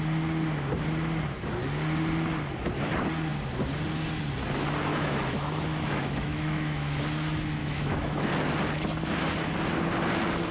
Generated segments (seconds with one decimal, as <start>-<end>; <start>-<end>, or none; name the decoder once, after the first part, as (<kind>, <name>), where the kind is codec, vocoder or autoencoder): 4.9-7.0 (autoencoder, DAC-VAE); 7.6-8.3